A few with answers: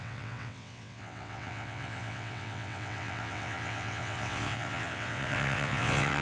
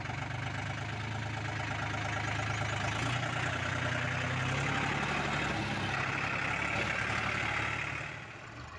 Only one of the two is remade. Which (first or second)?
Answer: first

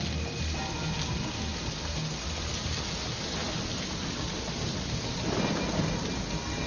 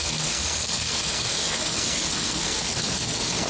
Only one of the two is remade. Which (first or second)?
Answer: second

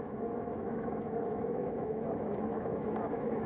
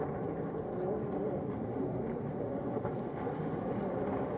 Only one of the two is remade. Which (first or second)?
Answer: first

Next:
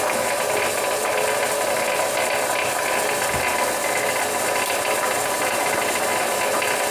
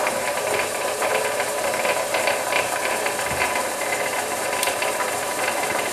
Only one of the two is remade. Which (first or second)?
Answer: second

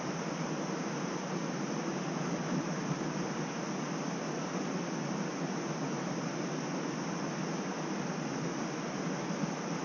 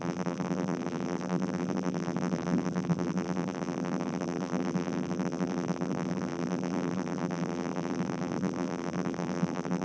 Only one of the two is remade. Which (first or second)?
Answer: second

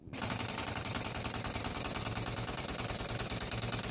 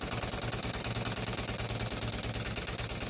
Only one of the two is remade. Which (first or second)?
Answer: first